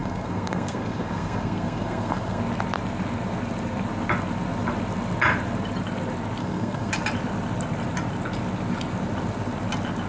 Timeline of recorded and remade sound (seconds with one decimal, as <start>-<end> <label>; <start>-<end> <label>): 0.0-2.4 remade; 2.4-6.4 recorded; 6.4-6.9 remade; 6.9-10.1 recorded